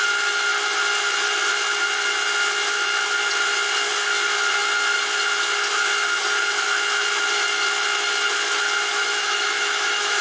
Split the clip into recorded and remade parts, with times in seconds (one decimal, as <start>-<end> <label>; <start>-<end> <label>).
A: 0.0-8.9 recorded; 8.9-10.2 remade